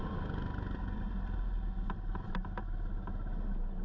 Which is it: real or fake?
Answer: real